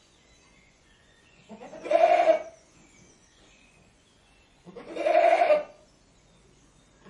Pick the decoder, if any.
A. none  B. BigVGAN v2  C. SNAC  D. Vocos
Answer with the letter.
D